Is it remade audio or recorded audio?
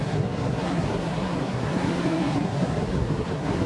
remade